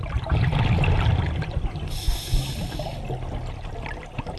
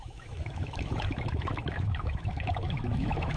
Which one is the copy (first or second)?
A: second